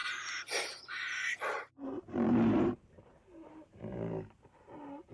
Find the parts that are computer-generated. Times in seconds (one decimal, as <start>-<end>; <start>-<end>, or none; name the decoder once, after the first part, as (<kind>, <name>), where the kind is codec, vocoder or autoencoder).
0.0-3.1 (vocoder, BigVGAN v2); 3.5-5.1